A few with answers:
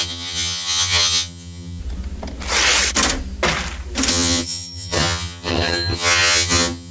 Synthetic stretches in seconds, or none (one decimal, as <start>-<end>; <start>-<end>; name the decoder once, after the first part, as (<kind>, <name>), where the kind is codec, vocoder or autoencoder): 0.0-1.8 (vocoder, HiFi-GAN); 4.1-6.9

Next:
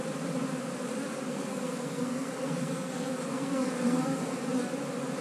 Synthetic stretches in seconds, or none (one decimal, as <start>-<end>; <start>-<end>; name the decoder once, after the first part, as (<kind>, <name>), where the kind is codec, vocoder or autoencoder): 1.3-4.4 (codec, SNAC)

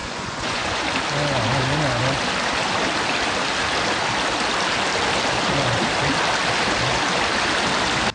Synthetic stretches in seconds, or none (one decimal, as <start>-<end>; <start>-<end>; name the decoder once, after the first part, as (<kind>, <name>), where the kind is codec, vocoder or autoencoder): 0.0-0.8 (vocoder, Vocos)

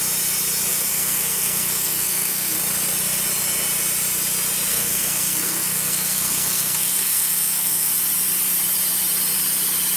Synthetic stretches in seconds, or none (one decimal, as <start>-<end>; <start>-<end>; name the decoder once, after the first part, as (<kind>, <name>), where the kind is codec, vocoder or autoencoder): 0.7-2.6 (codec, SNAC); 4.7-7.9

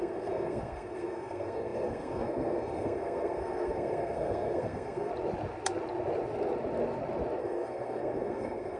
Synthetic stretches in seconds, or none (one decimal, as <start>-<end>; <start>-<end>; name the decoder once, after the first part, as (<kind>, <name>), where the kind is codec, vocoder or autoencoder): 0.0-5.1 (codec, SNAC); 7.4-8.8